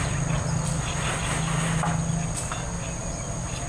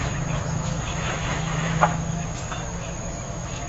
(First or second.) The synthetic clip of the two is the second